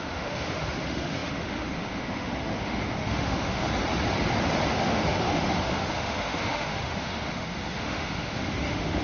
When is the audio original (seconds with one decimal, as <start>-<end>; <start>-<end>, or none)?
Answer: 3.6-4.7